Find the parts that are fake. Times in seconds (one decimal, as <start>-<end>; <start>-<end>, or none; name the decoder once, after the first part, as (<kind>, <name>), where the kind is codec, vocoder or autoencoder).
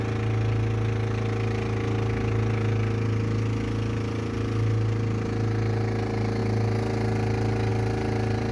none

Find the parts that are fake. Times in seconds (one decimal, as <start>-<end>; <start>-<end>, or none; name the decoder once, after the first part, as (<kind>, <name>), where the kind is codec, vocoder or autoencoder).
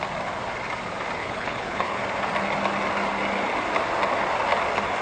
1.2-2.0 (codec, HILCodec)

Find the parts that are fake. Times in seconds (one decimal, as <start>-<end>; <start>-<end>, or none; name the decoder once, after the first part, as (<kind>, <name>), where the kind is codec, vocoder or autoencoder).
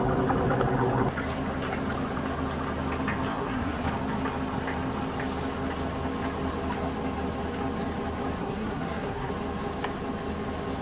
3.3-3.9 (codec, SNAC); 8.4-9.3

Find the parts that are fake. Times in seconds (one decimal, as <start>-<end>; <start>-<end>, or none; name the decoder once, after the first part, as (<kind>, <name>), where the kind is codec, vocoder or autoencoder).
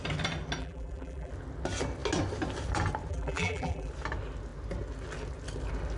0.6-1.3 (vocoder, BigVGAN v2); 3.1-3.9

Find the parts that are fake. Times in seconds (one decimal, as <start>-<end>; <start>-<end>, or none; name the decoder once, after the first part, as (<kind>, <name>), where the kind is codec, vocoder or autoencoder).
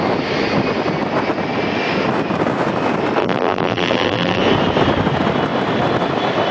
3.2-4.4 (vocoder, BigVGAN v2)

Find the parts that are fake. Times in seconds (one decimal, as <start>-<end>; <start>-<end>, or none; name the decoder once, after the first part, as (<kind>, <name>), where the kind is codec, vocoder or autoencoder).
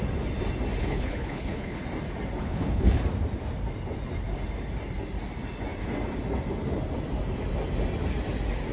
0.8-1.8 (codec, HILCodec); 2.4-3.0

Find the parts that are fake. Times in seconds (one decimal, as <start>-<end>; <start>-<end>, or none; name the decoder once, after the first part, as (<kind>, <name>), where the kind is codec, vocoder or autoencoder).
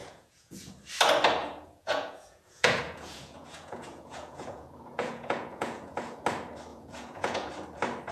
0.0-0.7 (vocoder, Vocos); 1.4-6.2; 6.7-7.5